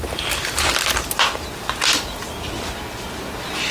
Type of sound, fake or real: real